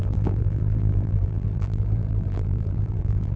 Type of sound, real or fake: fake